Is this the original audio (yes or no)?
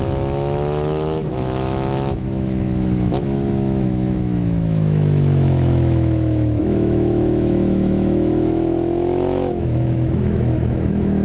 no